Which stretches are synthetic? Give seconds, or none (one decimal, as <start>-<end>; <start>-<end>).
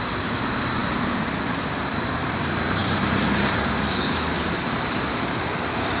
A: 0.0-6.0